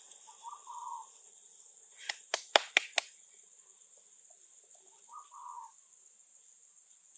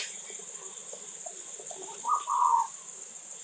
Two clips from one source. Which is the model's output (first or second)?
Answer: second